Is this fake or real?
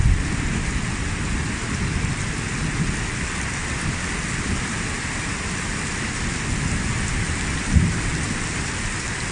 real